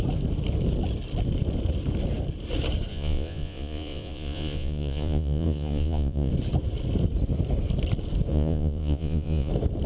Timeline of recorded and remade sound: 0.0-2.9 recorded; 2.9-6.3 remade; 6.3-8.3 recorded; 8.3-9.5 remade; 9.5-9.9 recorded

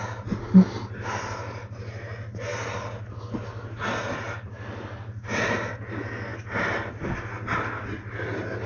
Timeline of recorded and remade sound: 0.0-8.7 recorded